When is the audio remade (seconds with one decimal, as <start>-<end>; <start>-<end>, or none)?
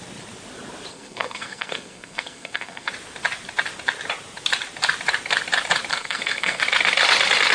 0.9-2.9; 5.9-6.6